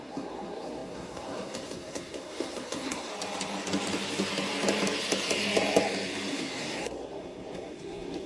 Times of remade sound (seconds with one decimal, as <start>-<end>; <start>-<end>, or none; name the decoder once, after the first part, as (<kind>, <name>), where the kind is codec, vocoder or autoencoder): 0.0-3.1 (codec, SNAC); 6.3-8.3